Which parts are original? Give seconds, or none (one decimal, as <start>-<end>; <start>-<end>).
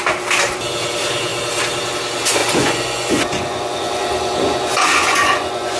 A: 0.0-2.4